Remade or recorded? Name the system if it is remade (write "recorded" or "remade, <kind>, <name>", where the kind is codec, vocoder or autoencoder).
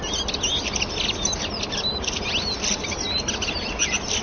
recorded